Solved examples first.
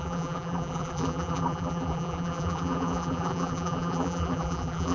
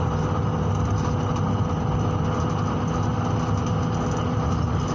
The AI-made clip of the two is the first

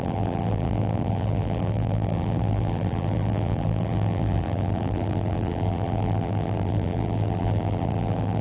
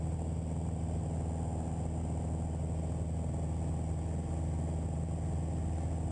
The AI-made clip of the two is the first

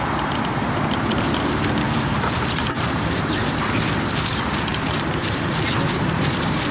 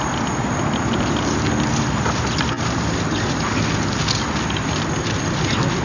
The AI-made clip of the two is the first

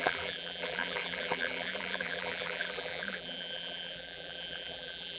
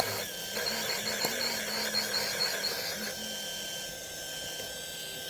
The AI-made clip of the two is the first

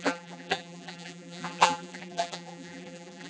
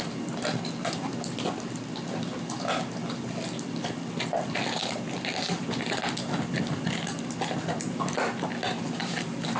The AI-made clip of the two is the first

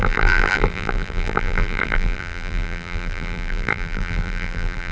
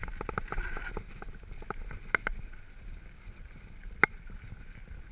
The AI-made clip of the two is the first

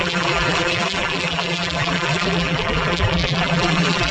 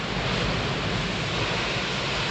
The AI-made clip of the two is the first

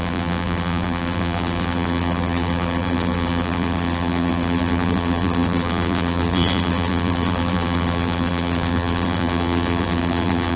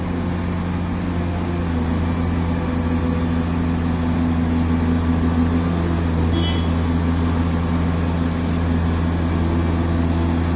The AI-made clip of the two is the first